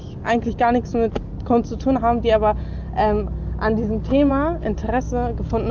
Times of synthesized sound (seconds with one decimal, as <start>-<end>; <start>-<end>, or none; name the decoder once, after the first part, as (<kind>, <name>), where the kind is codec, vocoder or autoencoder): none

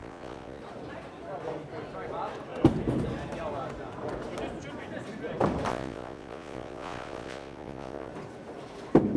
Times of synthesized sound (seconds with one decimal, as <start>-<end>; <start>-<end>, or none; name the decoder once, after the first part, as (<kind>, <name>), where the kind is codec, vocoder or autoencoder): 0.0-0.6 (vocoder, Vocos); 5.7-8.1

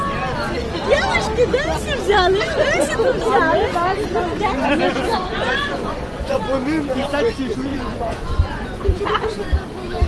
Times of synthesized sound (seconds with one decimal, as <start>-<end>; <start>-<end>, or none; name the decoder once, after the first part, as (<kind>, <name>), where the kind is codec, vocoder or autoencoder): 5.2-6.4 (vocoder, Vocos); 7.7-9.3

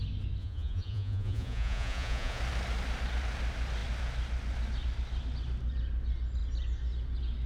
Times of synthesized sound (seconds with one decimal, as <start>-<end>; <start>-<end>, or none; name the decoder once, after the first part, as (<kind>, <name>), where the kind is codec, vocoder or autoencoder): 0.4-2.4 (vocoder, Vocos)

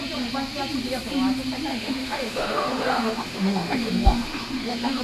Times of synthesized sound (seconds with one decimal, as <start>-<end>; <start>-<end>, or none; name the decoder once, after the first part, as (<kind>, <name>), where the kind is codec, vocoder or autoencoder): 1.7-5.0 (autoencoder, DAC-VAE)

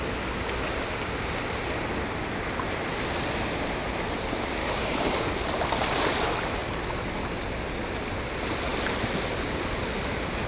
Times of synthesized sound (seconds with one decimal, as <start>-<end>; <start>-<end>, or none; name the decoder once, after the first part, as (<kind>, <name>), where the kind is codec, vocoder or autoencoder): 4.6-5.3 (codec, DAC)